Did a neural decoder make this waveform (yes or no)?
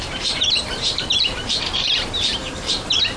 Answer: yes